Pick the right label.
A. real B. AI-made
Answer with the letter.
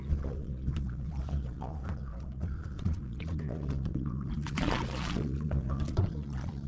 B